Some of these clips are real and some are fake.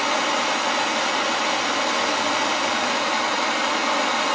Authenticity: real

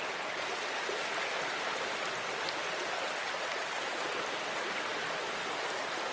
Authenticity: real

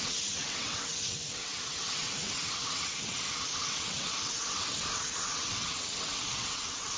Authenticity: fake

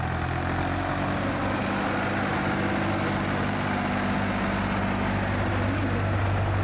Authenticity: real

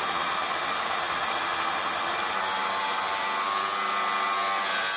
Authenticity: real